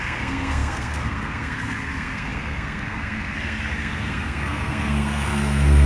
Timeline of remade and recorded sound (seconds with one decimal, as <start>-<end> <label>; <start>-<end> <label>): 0.0-5.9 remade

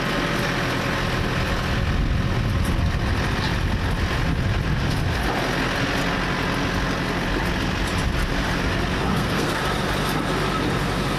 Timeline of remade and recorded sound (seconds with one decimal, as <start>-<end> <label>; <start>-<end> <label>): 0.0-9.1 recorded; 9.1-9.6 remade; 9.6-11.2 recorded

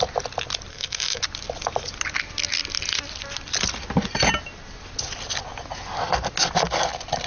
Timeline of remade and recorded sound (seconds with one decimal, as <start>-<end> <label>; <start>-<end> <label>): 0.0-0.7 recorded; 0.7-1.2 remade; 1.2-7.3 recorded

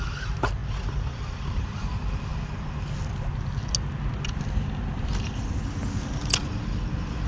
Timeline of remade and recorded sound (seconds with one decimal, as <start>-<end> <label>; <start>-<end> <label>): 0.0-7.3 recorded

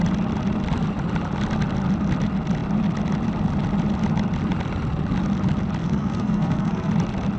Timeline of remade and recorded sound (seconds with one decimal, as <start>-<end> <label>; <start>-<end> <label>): 0.0-5.8 recorded; 5.8-6.9 remade; 6.9-7.4 recorded

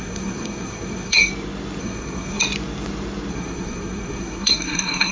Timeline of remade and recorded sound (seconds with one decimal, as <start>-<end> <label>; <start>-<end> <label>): 0.0-1.3 remade; 1.3-1.8 recorded; 1.8-2.4 remade; 2.4-3.3 recorded; 3.3-5.1 remade

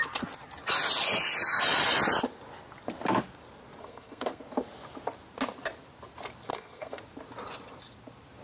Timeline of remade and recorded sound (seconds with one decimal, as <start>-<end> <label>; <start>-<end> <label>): 0.0-3.8 recorded; 3.8-4.4 remade; 4.4-6.5 recorded; 6.5-7.0 remade; 7.0-8.4 recorded

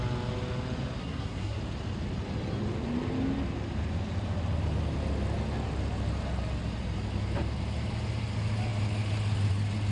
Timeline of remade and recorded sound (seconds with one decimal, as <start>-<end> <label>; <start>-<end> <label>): 0.0-1.0 recorded; 1.0-1.6 remade; 1.6-9.9 recorded